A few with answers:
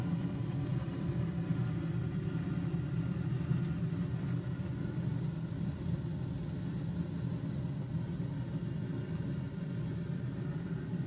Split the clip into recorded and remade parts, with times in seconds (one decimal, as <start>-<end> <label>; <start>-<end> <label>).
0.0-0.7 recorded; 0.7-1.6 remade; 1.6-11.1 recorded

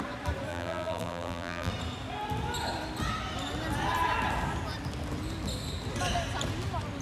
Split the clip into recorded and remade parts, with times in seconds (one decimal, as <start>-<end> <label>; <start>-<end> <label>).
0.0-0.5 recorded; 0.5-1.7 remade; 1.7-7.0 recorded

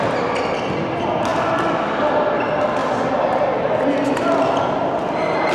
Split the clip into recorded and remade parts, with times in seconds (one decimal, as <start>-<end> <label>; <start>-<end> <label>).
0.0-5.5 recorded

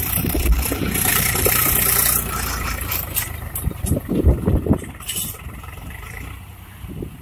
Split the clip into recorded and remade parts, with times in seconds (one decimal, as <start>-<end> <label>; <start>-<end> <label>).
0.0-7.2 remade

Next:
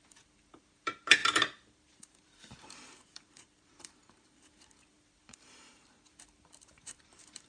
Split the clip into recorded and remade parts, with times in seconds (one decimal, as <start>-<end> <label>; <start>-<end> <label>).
0.0-7.5 remade

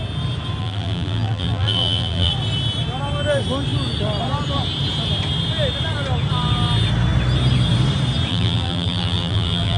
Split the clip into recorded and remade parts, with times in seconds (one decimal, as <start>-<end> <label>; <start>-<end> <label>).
0.0-0.6 recorded; 0.6-2.3 remade; 2.3-8.3 recorded; 8.3-9.8 remade